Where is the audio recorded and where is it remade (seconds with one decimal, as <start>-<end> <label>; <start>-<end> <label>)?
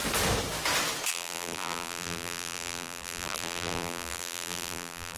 0.0-1.1 recorded; 1.1-5.2 remade